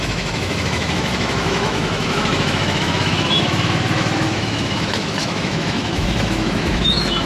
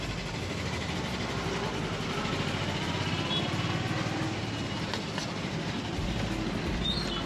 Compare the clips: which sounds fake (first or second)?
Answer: first